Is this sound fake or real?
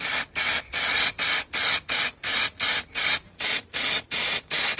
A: real